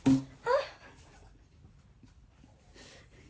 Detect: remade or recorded recorded